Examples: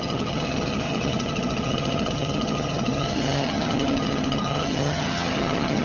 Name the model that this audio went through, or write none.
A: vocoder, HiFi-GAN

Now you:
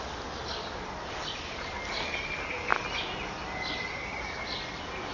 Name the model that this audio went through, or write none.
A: none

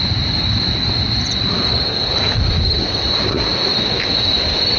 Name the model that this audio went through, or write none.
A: none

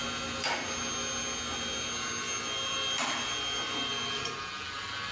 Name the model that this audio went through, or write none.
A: none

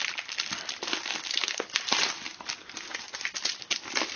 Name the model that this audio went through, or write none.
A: none